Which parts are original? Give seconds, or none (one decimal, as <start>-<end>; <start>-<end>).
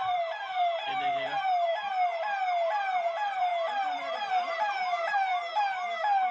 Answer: 1.7-3.0; 3.5-4.3; 5.5-6.3